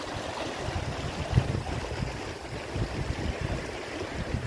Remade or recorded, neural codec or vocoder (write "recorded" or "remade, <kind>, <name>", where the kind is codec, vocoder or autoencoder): recorded